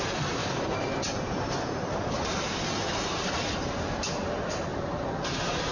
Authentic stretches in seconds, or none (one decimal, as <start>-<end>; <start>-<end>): 0.0-0.4; 2.8-4.7; 5.3-5.7